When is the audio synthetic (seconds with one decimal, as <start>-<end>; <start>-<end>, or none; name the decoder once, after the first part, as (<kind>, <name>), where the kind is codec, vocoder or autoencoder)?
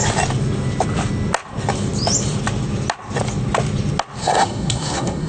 4.2-5.3 (codec, SNAC)